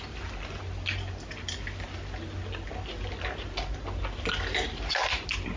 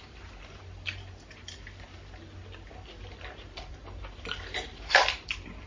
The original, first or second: first